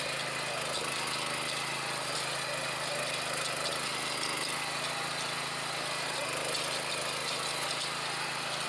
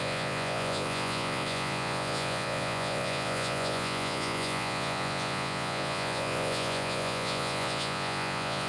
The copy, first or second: second